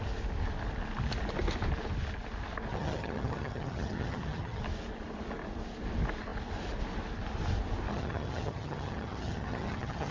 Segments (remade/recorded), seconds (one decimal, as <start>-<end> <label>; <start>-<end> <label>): 0.0-2.7 recorded; 2.7-4.6 remade; 4.6-7.9 recorded; 7.9-10.1 remade